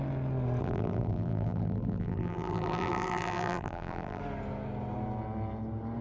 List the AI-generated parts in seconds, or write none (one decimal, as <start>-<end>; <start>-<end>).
0.6-4.2